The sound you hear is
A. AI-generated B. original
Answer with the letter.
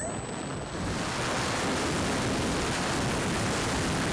B